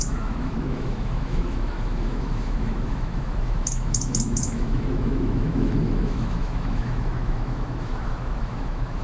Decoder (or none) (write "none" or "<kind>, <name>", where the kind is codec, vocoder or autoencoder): autoencoder, DAC-VAE